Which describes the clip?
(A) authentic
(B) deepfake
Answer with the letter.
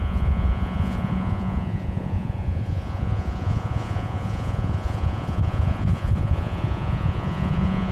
B